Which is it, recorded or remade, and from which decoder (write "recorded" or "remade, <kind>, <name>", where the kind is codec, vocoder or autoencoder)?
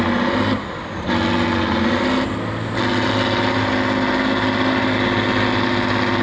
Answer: recorded